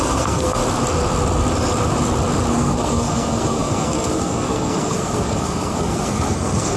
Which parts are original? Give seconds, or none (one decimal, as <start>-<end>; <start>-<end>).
0.6-2.5